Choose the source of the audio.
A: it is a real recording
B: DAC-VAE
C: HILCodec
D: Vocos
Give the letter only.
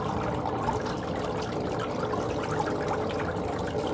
A